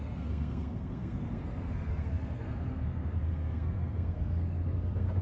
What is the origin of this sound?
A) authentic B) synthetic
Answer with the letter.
B